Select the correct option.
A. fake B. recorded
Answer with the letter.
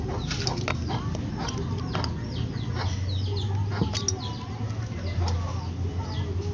B